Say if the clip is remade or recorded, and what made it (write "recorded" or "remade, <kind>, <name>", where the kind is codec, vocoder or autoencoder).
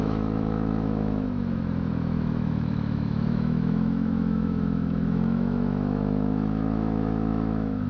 remade, autoencoder, DAC-VAE